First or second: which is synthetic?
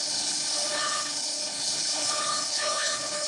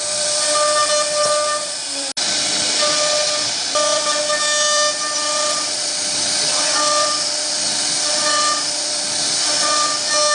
first